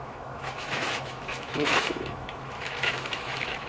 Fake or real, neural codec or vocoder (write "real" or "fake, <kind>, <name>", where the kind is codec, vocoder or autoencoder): fake, autoencoder, DAC-VAE